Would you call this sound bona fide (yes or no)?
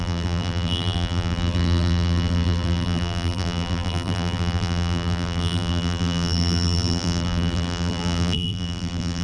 no